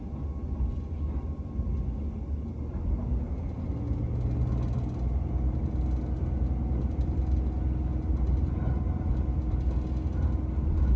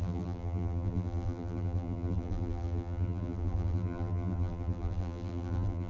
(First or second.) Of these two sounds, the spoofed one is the second